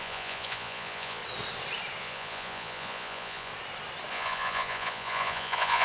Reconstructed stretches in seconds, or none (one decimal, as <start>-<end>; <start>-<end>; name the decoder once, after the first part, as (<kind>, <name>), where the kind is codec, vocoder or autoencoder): 0.0-1.2 (vocoder, Vocos); 2.0-3.5; 4.1-5.8